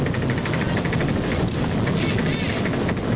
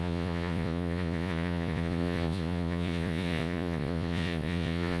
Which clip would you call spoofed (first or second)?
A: second